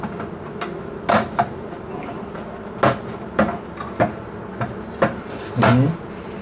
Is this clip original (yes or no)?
yes